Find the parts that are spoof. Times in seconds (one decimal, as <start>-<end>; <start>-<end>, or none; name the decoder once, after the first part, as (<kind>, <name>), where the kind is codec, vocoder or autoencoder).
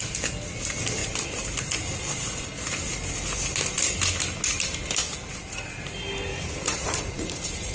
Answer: 6.3-7.7 (vocoder, Vocos)